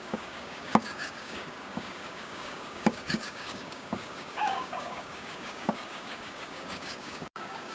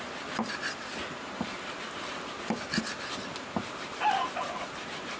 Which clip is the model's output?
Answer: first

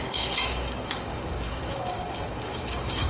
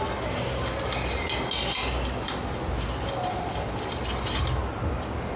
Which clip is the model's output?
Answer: first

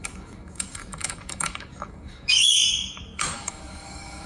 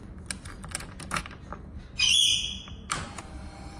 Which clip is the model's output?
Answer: first